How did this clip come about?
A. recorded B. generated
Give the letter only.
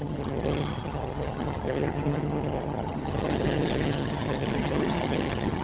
B